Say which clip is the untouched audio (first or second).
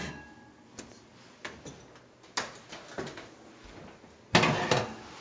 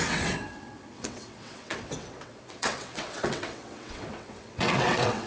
first